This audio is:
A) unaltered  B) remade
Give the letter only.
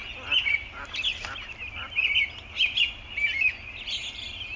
A